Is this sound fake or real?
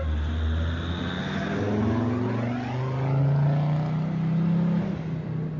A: real